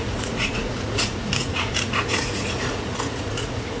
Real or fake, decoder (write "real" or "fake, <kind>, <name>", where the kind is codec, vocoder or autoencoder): fake, vocoder, Vocos